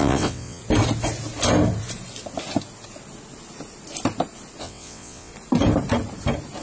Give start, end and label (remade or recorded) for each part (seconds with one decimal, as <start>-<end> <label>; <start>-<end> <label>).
0.0-0.6 remade; 0.6-4.6 recorded; 4.6-5.3 remade; 5.3-6.6 recorded

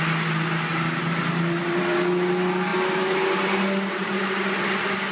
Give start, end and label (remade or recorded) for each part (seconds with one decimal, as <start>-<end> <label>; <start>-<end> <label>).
0.0-5.1 recorded

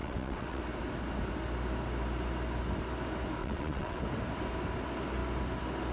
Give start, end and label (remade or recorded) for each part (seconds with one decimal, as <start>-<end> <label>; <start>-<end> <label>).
0.0-0.6 remade; 0.6-3.4 recorded; 3.4-4.0 remade; 4.0-5.9 recorded

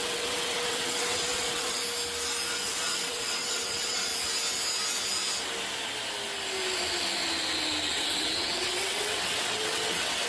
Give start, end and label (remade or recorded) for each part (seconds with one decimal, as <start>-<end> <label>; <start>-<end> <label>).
0.0-1.8 remade; 1.8-2.5 recorded; 2.5-4.1 remade; 4.1-7.9 recorded; 7.9-10.3 remade

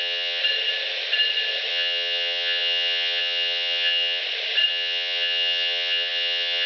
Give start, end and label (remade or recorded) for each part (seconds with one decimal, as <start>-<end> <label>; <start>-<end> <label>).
0.0-0.4 remade; 0.4-1.7 recorded; 1.7-4.2 remade; 4.2-4.7 recorded; 4.7-6.7 remade

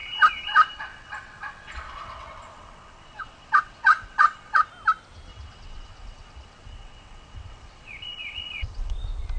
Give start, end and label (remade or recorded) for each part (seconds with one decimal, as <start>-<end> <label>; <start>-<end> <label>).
0.0-4.7 remade; 4.7-5.3 recorded; 5.3-8.9 remade; 8.9-9.4 recorded

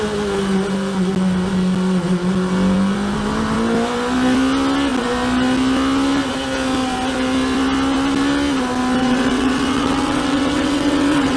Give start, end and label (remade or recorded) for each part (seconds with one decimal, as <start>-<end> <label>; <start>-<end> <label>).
0.0-9.0 recorded; 9.0-11.4 remade

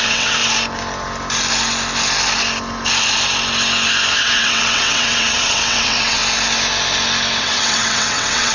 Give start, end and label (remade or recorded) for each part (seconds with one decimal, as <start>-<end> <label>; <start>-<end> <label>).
0.0-0.4 remade; 0.4-4.2 recorded; 4.2-6.2 remade; 6.2-7.4 recorded; 7.4-8.5 remade